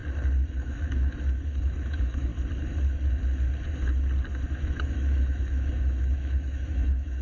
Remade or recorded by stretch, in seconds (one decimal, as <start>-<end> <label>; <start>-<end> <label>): 0.0-0.5 recorded; 0.5-2.3 remade; 2.3-4.6 recorded; 4.6-7.2 remade